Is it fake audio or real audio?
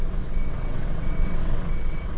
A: fake